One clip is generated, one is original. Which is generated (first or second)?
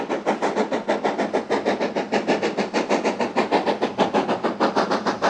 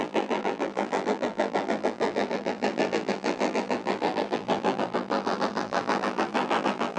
second